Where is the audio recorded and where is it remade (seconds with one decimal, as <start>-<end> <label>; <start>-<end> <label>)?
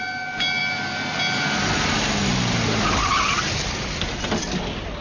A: 0.0-5.0 recorded